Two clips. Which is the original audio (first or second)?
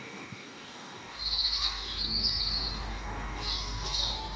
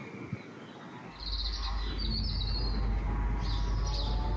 second